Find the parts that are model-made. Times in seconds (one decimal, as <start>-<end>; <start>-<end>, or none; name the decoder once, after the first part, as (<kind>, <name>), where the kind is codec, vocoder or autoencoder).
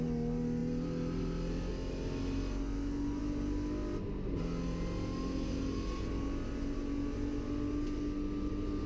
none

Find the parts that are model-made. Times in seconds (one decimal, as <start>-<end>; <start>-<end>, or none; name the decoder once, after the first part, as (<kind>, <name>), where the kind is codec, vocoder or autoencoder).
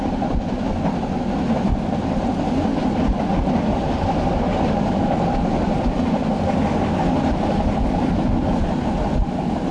none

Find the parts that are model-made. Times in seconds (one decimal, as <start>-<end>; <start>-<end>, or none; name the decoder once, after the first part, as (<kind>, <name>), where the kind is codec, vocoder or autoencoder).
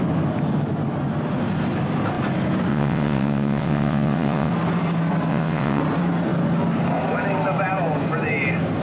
2.7-4.5 (vocoder, WaveNeXt); 5.3-5.8